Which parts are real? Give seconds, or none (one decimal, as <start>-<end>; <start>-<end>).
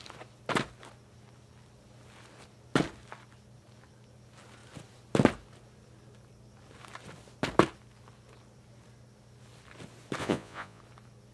0.0-10.2; 10.8-11.3